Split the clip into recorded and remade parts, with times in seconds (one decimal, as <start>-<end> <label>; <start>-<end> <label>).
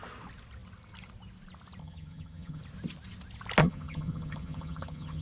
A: 0.0-1.8 recorded; 1.8-2.6 remade; 2.6-3.6 recorded; 3.6-5.2 remade